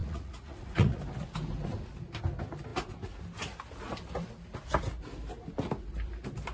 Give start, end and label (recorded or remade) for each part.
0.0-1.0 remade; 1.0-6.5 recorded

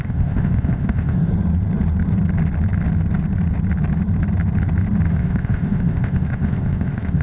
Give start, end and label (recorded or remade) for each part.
0.0-1.3 remade; 1.3-5.1 recorded; 5.1-7.2 remade

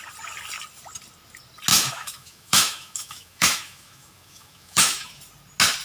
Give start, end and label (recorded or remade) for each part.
0.0-1.7 recorded; 1.7-5.2 remade; 5.2-5.8 recorded

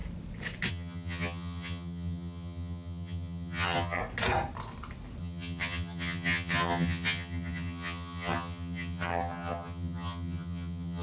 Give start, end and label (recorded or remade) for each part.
0.0-0.7 recorded; 0.7-4.0 remade; 4.0-5.2 recorded; 5.2-11.0 remade

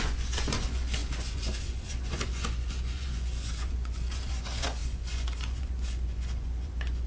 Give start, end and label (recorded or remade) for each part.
0.0-7.1 remade

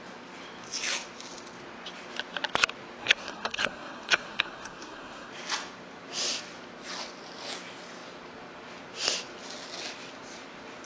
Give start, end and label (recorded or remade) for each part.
0.0-3.0 recorded; 3.0-5.3 remade; 5.3-10.8 recorded

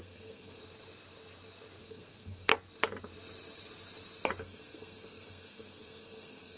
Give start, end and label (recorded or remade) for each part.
0.0-0.6 remade; 0.6-1.8 recorded; 1.8-2.5 remade; 2.5-4.4 recorded; 4.4-6.6 remade

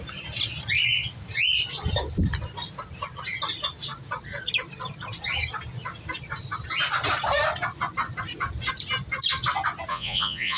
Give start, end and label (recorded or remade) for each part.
0.0-9.9 recorded; 9.9-10.6 remade